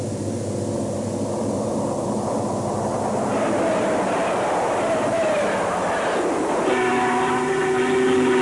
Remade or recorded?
recorded